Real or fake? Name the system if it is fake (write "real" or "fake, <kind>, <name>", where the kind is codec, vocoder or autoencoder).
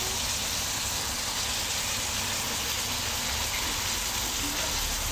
real